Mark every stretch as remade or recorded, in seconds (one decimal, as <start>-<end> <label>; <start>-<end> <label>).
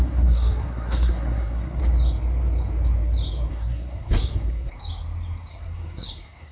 0.0-1.8 remade; 1.8-3.5 recorded; 3.5-4.8 remade; 4.8-5.5 recorded; 5.5-6.5 remade